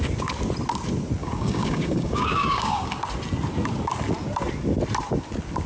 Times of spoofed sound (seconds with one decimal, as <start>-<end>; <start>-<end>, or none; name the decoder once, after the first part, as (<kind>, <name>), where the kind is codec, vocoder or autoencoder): 1.2-2.9 (codec, DAC)